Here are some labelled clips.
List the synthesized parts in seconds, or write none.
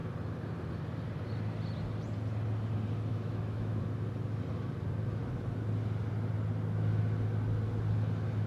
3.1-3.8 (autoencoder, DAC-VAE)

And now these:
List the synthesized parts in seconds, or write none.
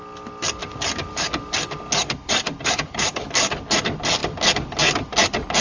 0.6-1.3 (vocoder, BigVGAN v2); 2.0-3.5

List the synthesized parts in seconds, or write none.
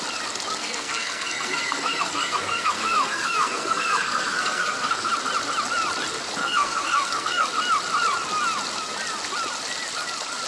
0.6-5.1 (codec, SNAC); 6.4-7.5